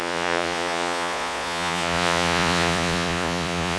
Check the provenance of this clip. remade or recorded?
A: remade